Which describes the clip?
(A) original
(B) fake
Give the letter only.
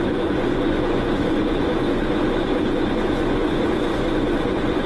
B